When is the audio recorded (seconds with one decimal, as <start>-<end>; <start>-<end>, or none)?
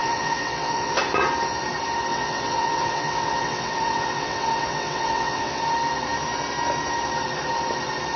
1.0-2.1; 5.6-8.2